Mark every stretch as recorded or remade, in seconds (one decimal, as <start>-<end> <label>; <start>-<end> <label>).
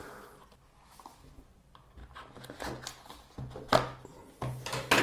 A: 0.0-5.0 recorded